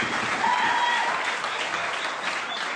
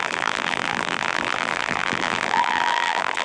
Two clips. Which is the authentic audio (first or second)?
first